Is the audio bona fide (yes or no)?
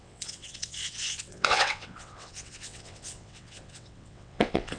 no